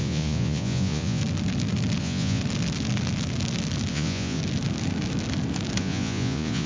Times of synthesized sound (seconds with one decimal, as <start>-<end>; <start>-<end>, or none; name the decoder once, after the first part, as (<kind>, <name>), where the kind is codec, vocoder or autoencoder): 0.0-1.2 (vocoder, Vocos); 2.0-2.4; 3.9-4.4; 5.8-6.7